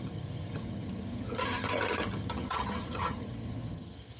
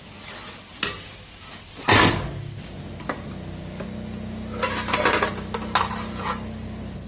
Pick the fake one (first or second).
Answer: first